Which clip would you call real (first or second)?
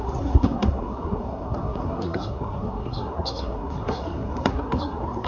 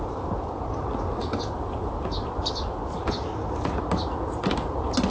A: second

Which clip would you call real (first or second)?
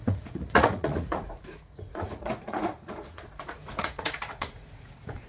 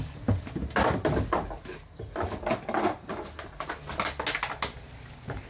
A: second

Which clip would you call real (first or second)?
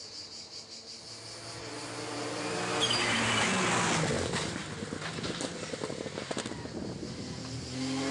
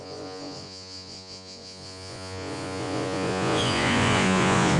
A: first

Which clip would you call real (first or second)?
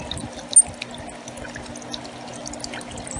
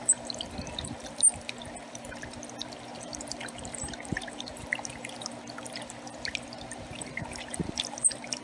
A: first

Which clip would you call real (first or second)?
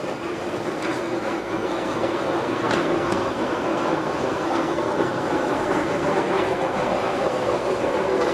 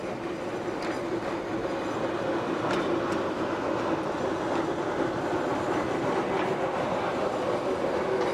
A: second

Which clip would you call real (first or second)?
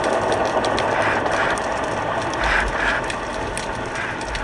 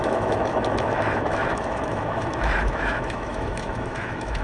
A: first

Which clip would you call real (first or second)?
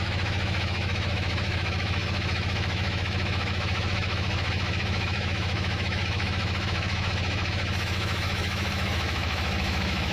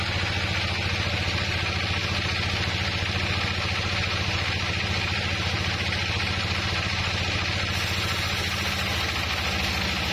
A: second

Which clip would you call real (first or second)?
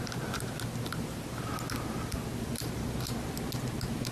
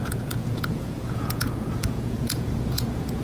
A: first